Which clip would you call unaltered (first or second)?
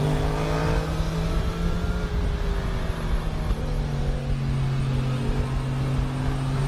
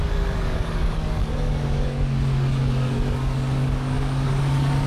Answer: first